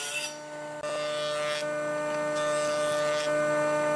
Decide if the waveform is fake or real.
real